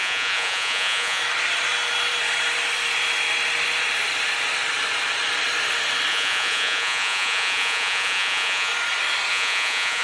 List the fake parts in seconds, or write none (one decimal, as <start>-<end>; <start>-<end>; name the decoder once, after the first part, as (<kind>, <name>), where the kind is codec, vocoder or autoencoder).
0.0-1.2 (vocoder, Vocos); 6.1-8.7; 9.3-10.0